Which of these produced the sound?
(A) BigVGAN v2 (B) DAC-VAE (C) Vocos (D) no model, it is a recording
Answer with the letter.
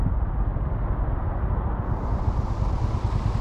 D